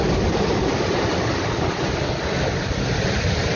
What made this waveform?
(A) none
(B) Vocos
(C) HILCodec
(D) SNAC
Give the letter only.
A